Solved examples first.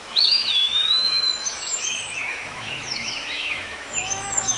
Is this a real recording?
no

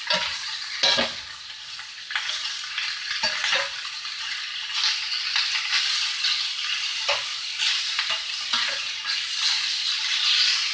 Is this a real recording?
yes